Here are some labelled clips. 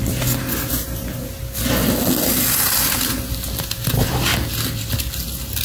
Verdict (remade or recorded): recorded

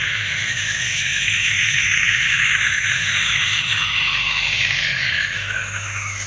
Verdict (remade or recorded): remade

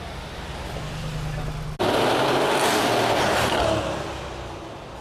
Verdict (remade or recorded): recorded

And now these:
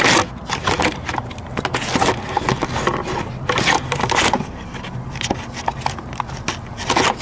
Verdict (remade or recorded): recorded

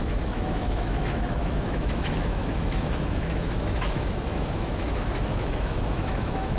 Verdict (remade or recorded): remade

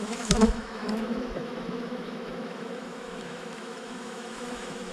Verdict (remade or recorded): remade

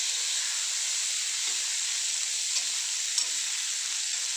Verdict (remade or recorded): recorded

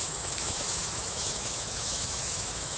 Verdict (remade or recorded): remade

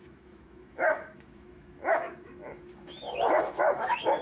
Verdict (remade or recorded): remade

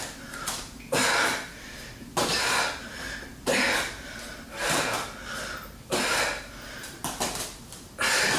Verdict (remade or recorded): recorded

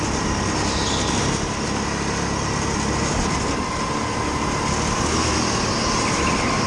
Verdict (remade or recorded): recorded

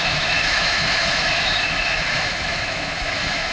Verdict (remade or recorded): remade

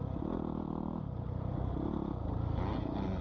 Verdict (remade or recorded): recorded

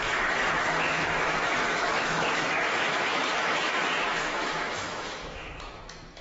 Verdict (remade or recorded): remade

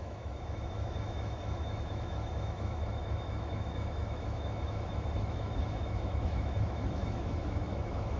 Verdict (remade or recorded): remade